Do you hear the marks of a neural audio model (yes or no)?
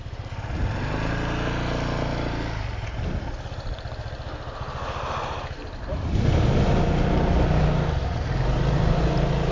no